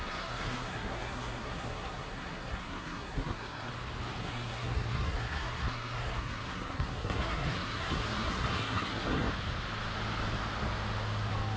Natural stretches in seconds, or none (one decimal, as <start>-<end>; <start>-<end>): 3.7-4.2; 9.3-11.6